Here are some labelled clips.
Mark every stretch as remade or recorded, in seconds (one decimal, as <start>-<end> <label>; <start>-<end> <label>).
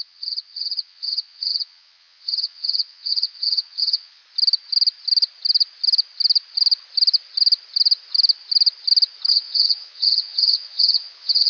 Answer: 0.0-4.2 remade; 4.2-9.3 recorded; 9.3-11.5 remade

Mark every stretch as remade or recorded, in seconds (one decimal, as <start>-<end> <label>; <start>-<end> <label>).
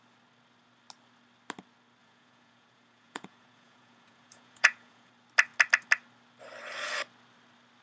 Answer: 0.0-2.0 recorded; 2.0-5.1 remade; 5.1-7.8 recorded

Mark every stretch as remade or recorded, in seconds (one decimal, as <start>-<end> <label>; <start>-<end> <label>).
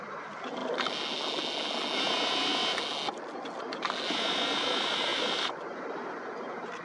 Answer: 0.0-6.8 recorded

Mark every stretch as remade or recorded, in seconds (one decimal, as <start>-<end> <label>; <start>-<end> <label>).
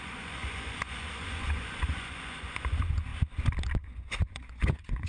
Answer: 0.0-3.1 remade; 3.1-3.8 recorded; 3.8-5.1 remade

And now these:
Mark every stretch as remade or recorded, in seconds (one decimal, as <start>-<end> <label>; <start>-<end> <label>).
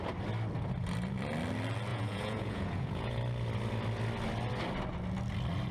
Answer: 0.0-1.9 recorded; 1.9-3.2 remade; 3.2-5.7 recorded